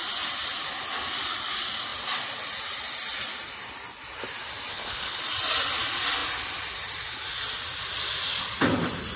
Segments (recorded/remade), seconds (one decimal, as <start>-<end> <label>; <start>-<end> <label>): 0.0-4.7 recorded; 4.7-5.2 remade; 5.2-9.2 recorded